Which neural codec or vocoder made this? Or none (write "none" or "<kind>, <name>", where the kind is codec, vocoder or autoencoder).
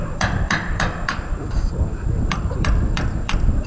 vocoder, BigVGAN v2